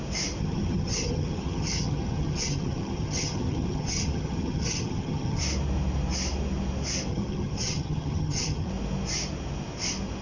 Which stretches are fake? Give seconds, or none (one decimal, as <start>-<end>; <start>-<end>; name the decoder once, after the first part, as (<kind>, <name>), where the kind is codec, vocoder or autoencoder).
0.4-5.4 (vocoder, HiFi-GAN); 7.1-8.7